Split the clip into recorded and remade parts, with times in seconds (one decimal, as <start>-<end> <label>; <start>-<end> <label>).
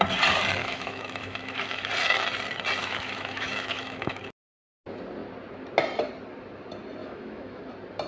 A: 0.0-0.6 recorded; 0.6-1.9 remade; 1.9-2.8 recorded; 2.8-4.2 remade; 4.2-7.0 recorded; 7.0-7.6 remade; 7.6-8.1 recorded